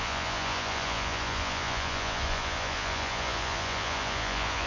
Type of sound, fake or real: fake